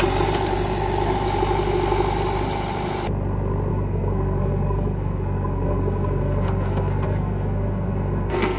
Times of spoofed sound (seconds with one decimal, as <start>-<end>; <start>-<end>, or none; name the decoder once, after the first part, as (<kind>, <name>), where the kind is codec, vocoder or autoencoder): 3.7-8.6 (codec, SNAC)